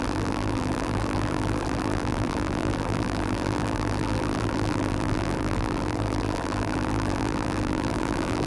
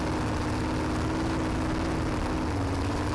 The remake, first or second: first